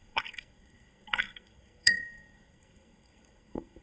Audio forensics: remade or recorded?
remade